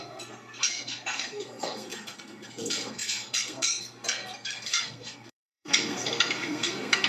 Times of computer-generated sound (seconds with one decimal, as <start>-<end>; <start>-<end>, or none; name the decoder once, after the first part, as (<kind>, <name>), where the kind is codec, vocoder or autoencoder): 0.0-7.1 (codec, SNAC)

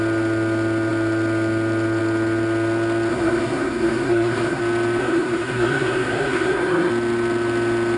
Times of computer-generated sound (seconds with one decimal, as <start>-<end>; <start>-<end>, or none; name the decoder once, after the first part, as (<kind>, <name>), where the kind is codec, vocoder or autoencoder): 3.1-4.6 (codec, SNAC); 5.0-6.9